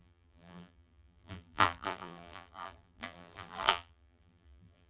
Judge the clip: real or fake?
fake